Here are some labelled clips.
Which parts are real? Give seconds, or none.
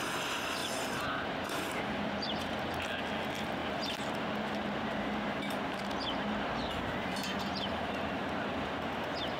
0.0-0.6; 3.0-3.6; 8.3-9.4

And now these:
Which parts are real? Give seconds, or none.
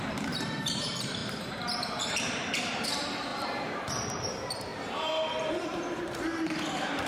none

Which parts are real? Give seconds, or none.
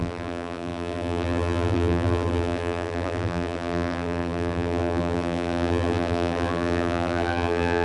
none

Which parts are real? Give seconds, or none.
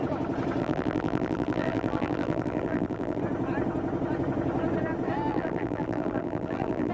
0.0-0.6; 3.2-5.3